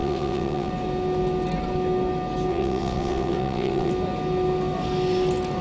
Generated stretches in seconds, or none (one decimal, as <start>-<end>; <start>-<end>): 0.0-0.7; 2.5-3.9